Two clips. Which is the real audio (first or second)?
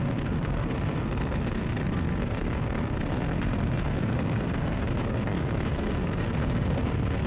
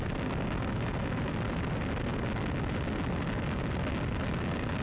second